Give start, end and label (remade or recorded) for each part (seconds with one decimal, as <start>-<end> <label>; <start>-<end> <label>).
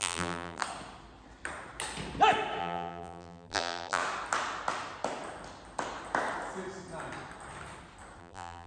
0.0-0.6 remade; 0.6-2.6 recorded; 2.6-4.0 remade; 4.0-8.2 recorded; 8.2-8.7 remade